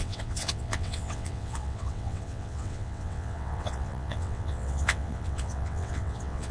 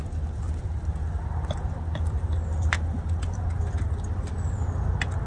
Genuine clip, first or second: second